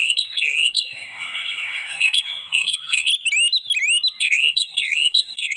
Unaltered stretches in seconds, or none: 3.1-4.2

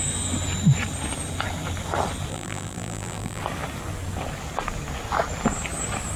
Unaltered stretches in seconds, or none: 0.0-2.3; 3.4-6.2

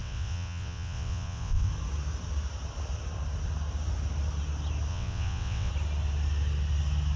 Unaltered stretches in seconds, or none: 1.7-4.9; 5.7-7.2

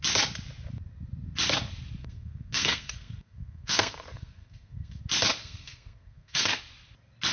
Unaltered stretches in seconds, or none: 0.0-2.0; 5.0-5.4; 6.6-7.3

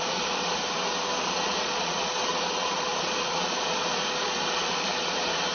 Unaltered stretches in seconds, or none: 0.6-1.2

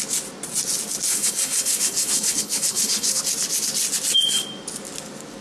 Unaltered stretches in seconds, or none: 0.0-1.1; 3.2-5.4

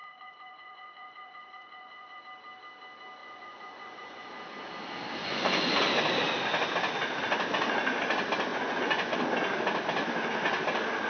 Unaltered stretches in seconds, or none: 2.2-3.2; 4.3-5.2; 5.8-8.5; 9.2-11.1